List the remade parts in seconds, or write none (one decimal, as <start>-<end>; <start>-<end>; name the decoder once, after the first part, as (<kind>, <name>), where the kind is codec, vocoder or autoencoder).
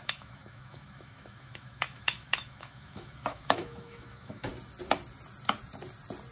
0.0-4.5 (autoencoder, DAC-VAE)